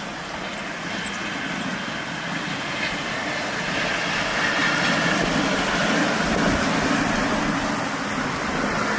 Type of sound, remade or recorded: recorded